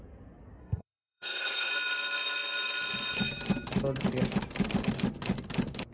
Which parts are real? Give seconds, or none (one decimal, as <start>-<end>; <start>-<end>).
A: 0.0-0.6; 1.7-5.9